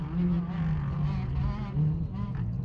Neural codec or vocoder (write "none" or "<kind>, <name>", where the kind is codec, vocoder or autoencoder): none